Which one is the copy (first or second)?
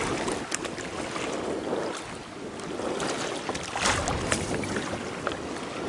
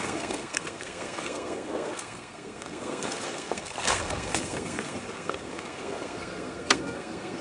second